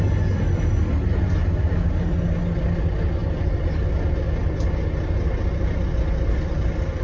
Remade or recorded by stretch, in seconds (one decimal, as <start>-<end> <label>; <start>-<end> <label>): 0.0-3.2 recorded; 3.2-3.7 remade; 3.7-7.0 recorded

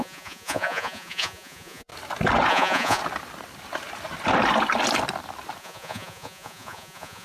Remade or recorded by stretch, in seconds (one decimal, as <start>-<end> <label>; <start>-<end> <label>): 0.0-1.9 remade; 1.9-2.5 recorded; 2.5-3.0 remade; 3.0-5.6 recorded; 5.6-7.2 remade

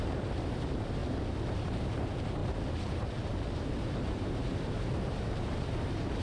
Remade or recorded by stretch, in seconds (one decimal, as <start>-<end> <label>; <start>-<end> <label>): 0.0-1.0 remade; 1.0-1.5 recorded; 1.5-6.2 remade

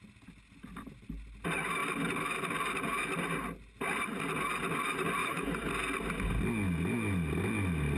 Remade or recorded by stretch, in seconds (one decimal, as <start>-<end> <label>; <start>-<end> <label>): 0.0-5.2 recorded; 5.2-5.7 remade; 5.7-8.0 recorded

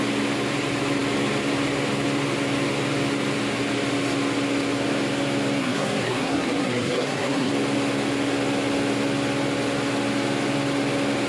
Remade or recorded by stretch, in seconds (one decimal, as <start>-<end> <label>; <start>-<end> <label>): 0.0-5.6 recorded; 5.6-7.5 remade; 7.5-11.3 recorded

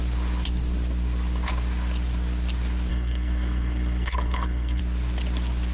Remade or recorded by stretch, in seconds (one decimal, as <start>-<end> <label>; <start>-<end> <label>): 0.0-2.9 recorded; 2.9-4.8 remade; 4.8-5.7 recorded

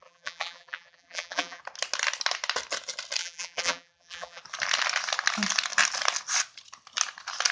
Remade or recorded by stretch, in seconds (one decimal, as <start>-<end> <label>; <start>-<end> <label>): 0.0-1.6 remade; 1.6-3.2 recorded; 3.2-4.4 remade; 4.4-7.5 recorded

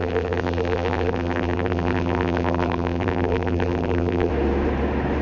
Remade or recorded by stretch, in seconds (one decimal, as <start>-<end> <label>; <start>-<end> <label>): 0.0-4.3 remade; 4.3-5.2 recorded